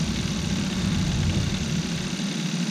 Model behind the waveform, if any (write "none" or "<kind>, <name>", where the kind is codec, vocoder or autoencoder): none